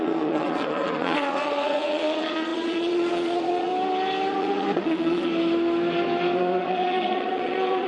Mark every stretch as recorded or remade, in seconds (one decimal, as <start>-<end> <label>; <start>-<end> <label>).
0.0-3.7 remade; 3.7-4.3 recorded; 4.3-5.3 remade; 5.3-6.6 recorded; 6.6-7.9 remade